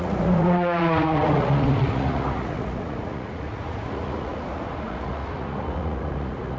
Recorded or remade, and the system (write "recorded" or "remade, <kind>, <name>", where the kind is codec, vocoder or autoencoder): remade, vocoder, Vocos